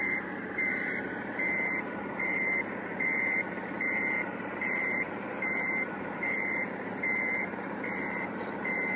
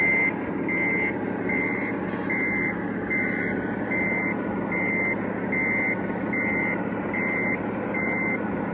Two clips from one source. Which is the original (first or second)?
second